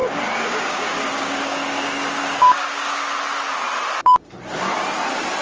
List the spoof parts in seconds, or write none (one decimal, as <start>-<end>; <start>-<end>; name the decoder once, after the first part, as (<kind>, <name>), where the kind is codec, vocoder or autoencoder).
0.0-3.2 (codec, DAC)